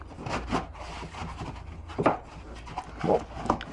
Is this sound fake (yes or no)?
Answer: no